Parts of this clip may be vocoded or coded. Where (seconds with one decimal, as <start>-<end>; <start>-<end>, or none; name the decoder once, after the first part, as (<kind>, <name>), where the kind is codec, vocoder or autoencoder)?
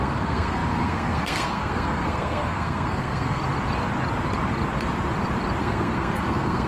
0.0-3.4 (codec, SNAC); 5.6-6.7